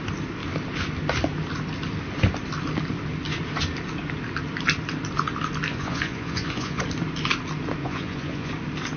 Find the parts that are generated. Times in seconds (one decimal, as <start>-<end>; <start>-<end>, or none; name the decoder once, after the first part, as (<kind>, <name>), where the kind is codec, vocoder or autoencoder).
5.7-6.8 (vocoder, Vocos); 7.8-8.5